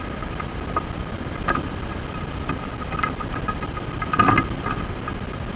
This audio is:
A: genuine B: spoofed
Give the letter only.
A